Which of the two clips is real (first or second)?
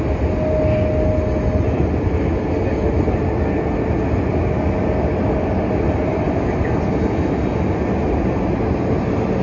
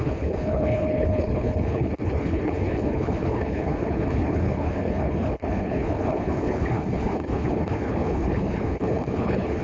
first